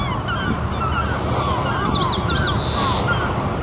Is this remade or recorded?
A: recorded